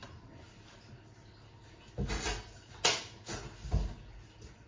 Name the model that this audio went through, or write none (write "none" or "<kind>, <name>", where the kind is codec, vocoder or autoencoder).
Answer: none